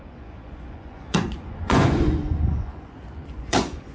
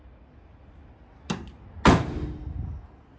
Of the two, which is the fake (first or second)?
first